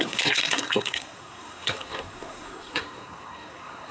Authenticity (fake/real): fake